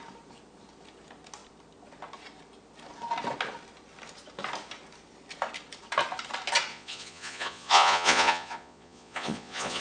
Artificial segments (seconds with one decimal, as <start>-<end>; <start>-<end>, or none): 6.7-9.8